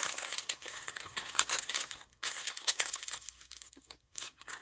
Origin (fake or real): fake